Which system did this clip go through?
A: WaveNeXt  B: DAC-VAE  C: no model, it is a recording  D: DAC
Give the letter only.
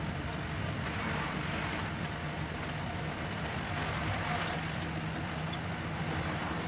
C